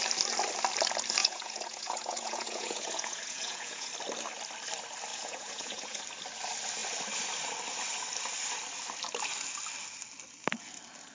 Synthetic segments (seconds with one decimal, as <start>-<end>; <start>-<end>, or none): 1.2-3.9; 5.1-6.0